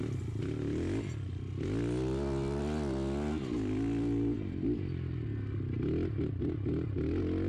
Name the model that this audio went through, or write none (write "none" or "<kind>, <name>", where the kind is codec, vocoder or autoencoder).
none